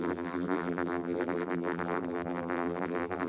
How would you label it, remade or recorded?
remade